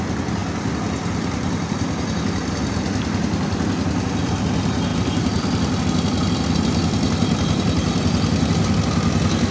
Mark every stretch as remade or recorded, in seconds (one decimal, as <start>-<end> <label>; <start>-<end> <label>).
0.0-4.9 recorded; 4.9-5.8 remade; 5.8-9.5 recorded